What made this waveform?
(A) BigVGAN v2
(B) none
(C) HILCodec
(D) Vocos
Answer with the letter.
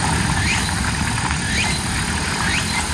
B